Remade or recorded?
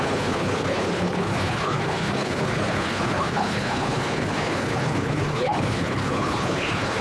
remade